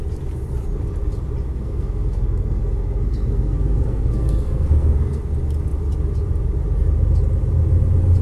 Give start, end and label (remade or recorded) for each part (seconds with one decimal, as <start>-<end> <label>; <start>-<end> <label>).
0.0-1.5 recorded; 1.5-5.3 remade; 5.3-8.2 recorded